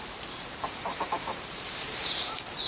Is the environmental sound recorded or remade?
remade